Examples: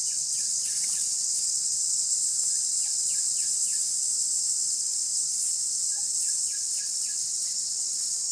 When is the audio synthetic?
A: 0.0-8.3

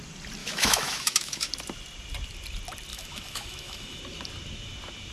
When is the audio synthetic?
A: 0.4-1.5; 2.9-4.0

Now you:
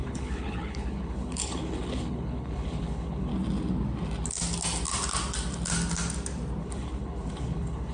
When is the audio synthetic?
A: 0.0-3.3; 6.6-7.9

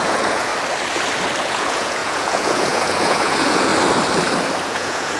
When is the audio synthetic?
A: 0.0-0.5; 1.4-3.7; 4.6-5.2

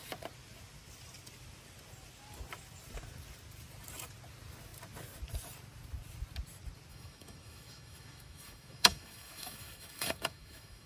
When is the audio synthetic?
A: 6.9-10.9